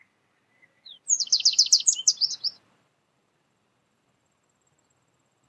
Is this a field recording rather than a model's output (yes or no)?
yes